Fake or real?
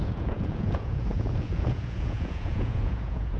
fake